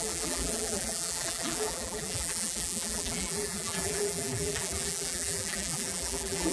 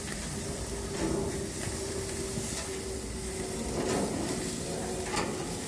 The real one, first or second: second